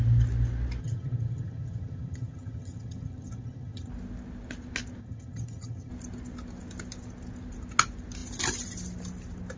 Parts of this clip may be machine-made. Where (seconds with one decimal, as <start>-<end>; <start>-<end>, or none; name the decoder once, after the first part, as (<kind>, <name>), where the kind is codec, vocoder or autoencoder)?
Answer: 0.8-3.9 (vocoder, HiFi-GAN); 5.0-5.9